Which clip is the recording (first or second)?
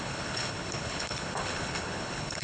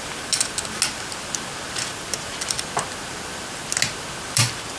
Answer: second